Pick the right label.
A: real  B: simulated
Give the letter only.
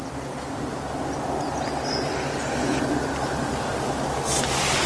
A